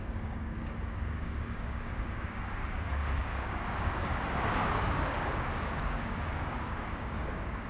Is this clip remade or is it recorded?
remade